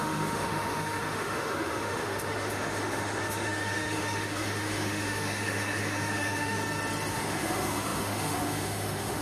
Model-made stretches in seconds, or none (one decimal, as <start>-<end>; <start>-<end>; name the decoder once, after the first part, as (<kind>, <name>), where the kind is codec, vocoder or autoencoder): 0.0-6.6 (autoencoder, DAC-VAE); 7.1-9.2